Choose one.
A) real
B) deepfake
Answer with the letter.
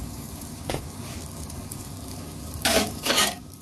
B